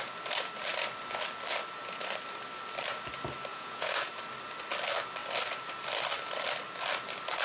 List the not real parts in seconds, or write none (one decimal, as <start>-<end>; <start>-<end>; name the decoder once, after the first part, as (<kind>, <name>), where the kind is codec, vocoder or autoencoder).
3.5-4.1 (vocoder, Vocos)